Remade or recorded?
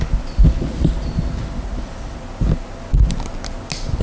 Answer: recorded